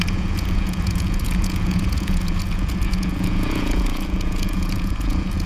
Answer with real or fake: fake